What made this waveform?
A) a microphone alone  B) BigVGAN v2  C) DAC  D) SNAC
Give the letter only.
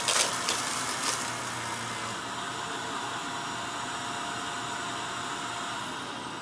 A